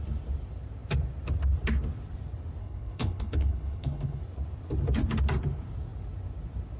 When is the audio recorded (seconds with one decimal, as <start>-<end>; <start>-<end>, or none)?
0.0-2.6; 4.2-6.8